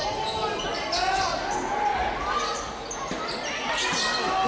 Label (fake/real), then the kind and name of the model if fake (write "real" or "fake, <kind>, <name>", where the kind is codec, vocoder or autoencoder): real